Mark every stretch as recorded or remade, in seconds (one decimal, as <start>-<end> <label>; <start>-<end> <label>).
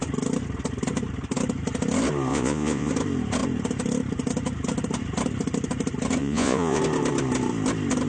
0.0-2.3 recorded; 2.3-2.9 remade; 2.9-6.2 recorded; 6.2-6.8 remade; 6.8-8.1 recorded